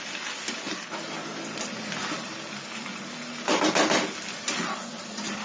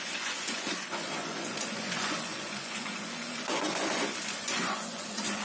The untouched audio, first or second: first